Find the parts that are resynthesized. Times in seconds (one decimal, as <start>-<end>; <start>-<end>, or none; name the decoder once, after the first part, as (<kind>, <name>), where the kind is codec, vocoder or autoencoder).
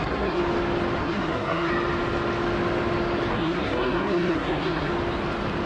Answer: 0.0-0.4 (codec, SNAC); 1.0-1.7; 3.3-4.9